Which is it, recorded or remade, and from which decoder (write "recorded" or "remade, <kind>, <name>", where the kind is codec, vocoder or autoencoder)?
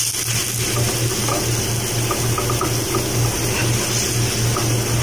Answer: recorded